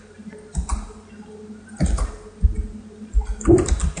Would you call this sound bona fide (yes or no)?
yes